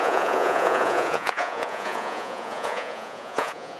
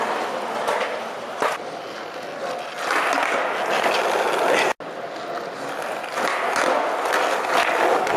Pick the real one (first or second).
second